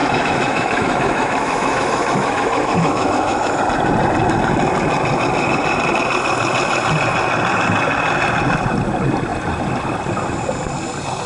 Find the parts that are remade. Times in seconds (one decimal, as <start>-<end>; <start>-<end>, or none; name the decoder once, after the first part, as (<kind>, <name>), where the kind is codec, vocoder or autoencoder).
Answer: 0.0-3.6 (autoencoder, DAC-VAE)